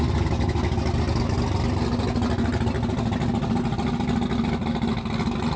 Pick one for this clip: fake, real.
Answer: real